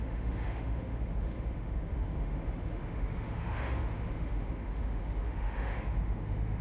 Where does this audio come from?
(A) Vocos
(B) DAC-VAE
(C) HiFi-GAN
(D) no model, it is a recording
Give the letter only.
B